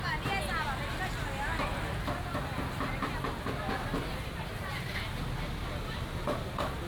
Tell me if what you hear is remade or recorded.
recorded